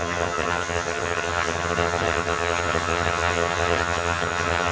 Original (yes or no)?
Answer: no